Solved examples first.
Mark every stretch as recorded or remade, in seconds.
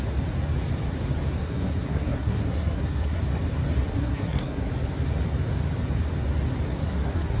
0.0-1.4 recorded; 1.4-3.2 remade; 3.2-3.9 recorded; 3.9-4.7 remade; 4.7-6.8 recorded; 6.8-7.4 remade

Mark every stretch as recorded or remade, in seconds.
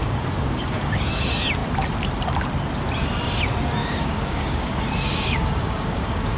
0.0-1.2 remade; 1.2-3.8 recorded; 3.8-6.4 remade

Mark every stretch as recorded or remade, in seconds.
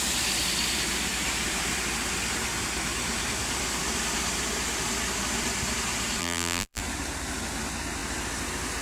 0.0-6.2 recorded; 6.2-6.8 remade; 6.8-8.8 recorded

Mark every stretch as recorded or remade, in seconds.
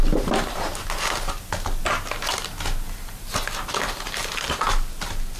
0.0-5.4 recorded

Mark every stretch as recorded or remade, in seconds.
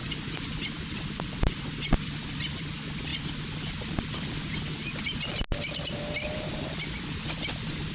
0.0-7.9 recorded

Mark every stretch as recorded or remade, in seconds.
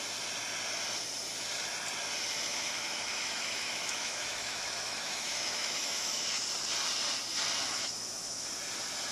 0.0-2.5 recorded; 2.5-6.2 remade; 6.2-7.6 recorded; 7.6-8.5 remade; 8.5-9.1 recorded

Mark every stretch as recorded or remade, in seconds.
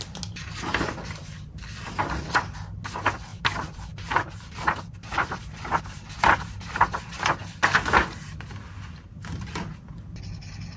0.0-1.2 recorded; 1.2-1.8 remade; 1.8-3.3 recorded; 3.3-5.8 remade; 5.8-10.8 recorded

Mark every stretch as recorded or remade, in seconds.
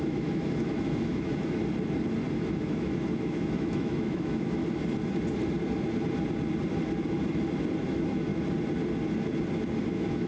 0.0-1.6 remade; 1.6-2.3 recorded; 2.3-4.6 remade; 4.6-7.8 recorded; 7.8-8.3 remade; 8.3-9.9 recorded; 9.9-10.3 remade